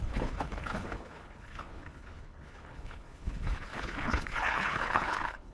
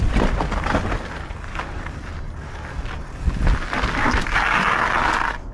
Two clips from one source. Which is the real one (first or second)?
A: second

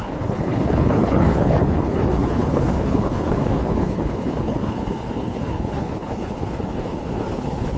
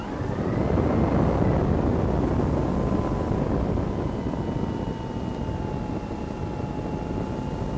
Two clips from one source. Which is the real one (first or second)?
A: second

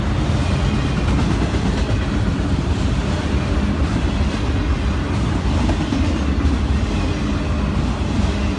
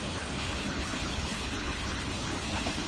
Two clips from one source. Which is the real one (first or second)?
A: first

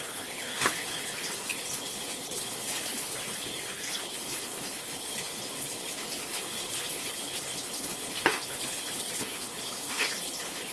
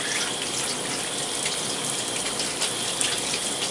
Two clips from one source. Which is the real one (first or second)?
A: second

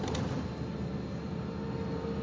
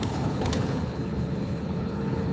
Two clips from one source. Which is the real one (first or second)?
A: first